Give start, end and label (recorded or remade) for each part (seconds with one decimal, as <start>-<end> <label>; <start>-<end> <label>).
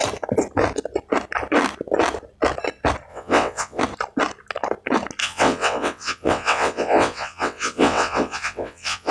0.0-3.1 recorded; 3.1-3.8 remade; 3.8-5.2 recorded; 5.2-9.1 remade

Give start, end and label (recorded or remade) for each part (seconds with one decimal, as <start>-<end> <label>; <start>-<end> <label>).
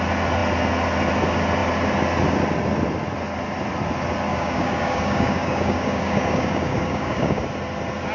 0.0-4.3 recorded; 4.3-7.4 remade; 7.4-8.1 recorded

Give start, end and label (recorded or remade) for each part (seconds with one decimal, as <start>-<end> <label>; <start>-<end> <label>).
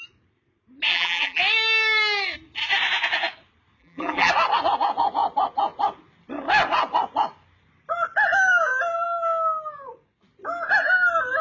0.0-0.9 recorded; 0.9-1.4 remade; 1.4-3.8 recorded; 3.8-4.3 remade; 4.3-11.4 recorded